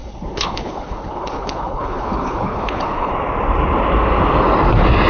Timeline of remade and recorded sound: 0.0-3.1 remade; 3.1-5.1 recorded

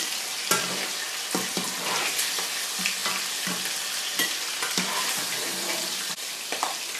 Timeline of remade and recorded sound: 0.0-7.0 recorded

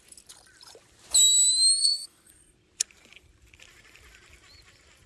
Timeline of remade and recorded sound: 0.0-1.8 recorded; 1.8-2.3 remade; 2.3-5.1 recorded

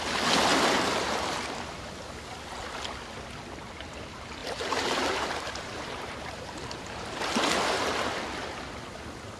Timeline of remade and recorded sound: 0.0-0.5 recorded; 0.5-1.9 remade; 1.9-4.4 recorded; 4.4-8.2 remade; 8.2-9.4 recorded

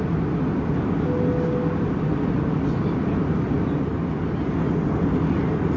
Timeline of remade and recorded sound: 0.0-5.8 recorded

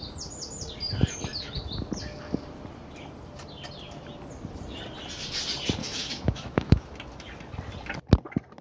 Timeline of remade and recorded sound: 0.0-5.8 recorded; 5.8-6.9 remade; 6.9-8.6 recorded

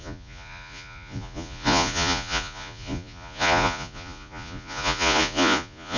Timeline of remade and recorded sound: 0.0-6.0 remade